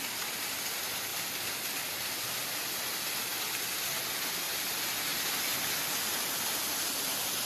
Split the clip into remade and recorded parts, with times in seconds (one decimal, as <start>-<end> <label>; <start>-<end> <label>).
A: 0.0-1.1 recorded; 1.1-3.5 remade; 3.5-7.4 recorded